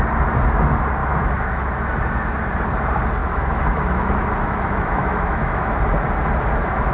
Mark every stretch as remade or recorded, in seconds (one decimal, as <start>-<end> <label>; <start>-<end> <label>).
0.0-1.0 recorded; 1.0-1.7 remade; 1.7-3.2 recorded; 3.2-5.8 remade; 5.8-6.9 recorded